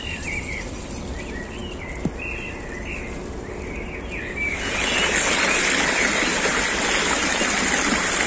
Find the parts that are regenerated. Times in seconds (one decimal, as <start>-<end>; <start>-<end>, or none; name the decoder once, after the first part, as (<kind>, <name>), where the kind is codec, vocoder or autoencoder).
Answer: none